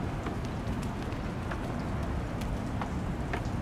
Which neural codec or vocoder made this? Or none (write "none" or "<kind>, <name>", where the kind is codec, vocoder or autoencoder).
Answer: none